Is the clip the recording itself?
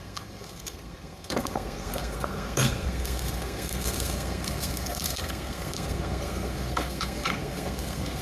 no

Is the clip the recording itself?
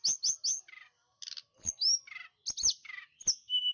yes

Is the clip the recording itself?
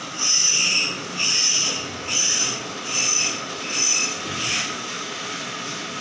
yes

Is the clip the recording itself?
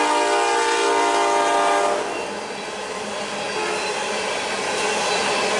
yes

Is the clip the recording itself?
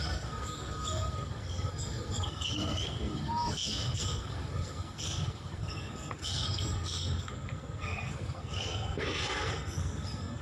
no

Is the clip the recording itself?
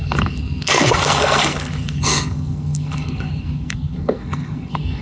no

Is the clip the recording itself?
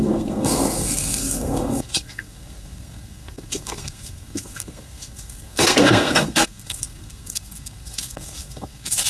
no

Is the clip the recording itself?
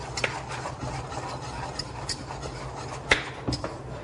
yes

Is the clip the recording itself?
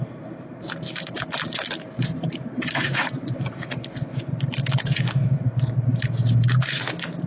yes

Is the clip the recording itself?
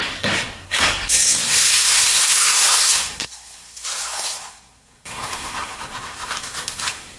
no